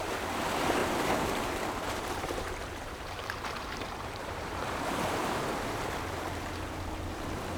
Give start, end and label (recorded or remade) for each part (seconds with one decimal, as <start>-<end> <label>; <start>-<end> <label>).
0.0-0.8 recorded; 0.8-5.4 remade; 5.4-7.6 recorded